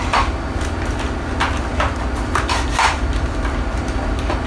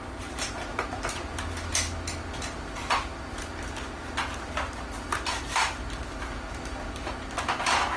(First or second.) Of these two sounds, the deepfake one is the first